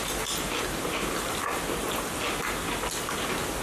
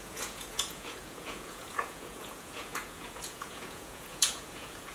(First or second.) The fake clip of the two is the second